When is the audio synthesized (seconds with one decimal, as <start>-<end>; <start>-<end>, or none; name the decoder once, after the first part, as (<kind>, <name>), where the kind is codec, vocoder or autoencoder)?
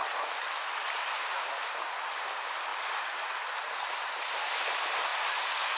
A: none